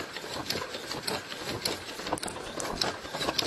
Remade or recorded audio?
recorded